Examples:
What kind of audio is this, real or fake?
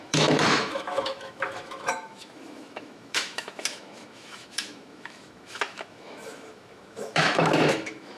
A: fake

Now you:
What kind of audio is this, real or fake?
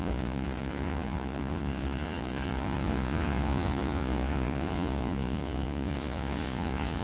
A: fake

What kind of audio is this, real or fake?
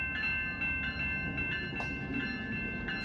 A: real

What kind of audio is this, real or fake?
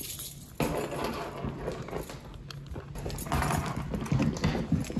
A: real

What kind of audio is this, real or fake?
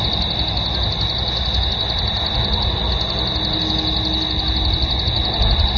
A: real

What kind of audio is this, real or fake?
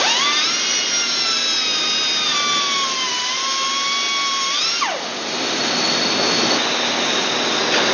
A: real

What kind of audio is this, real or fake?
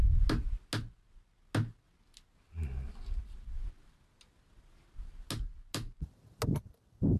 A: real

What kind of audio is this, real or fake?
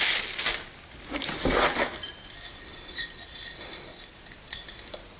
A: real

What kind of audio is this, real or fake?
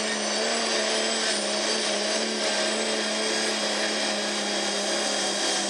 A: real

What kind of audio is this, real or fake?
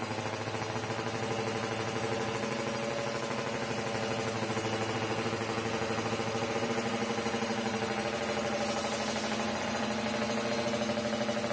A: real